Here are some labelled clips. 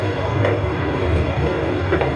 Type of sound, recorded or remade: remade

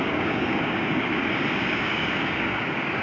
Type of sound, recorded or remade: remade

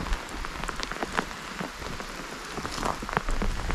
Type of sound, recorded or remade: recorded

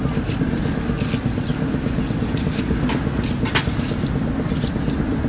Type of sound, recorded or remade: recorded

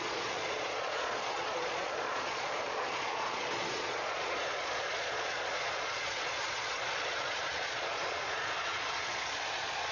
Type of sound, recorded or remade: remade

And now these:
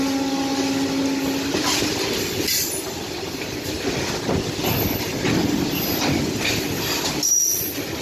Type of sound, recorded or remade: recorded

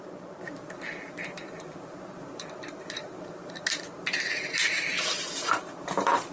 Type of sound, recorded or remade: remade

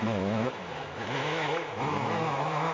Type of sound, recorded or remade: remade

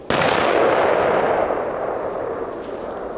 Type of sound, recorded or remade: recorded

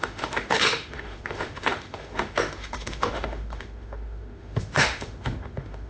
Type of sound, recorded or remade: remade